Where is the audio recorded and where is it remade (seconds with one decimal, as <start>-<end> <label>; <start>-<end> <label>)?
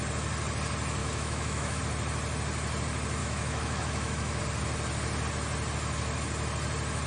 0.0-1.0 recorded; 1.0-1.8 remade; 1.8-3.2 recorded; 3.2-4.4 remade; 4.4-7.1 recorded